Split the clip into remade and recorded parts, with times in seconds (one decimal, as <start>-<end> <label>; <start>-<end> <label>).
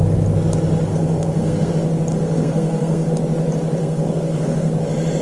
0.0-0.9 recorded; 0.9-1.7 remade; 1.7-2.1 recorded; 2.1-3.1 remade; 3.1-3.8 recorded; 3.8-4.7 remade; 4.7-5.2 recorded